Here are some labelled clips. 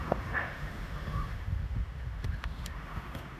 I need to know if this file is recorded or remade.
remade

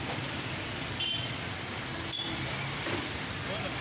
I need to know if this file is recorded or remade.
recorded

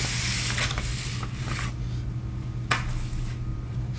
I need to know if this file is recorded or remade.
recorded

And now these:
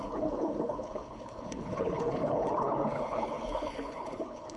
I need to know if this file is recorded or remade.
remade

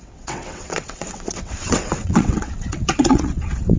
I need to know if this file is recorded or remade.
remade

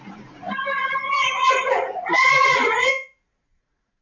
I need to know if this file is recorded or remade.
remade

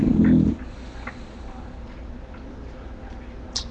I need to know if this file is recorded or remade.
recorded